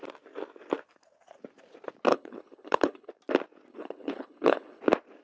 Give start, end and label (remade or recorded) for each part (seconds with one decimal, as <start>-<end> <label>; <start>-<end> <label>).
0.0-2.1 recorded; 2.1-3.1 remade; 3.1-3.7 recorded; 3.7-4.8 remade; 4.8-5.2 recorded